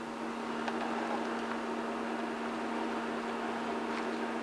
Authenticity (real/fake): real